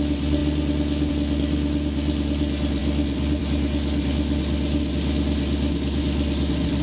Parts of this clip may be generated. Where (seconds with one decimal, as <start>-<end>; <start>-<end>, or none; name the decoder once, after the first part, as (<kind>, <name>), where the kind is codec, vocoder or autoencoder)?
none